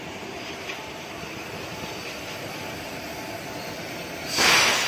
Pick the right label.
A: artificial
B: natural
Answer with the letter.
B